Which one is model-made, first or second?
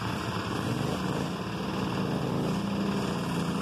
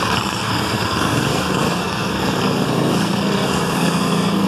second